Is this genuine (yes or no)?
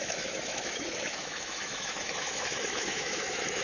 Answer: no